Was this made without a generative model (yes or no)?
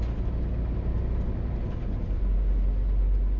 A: yes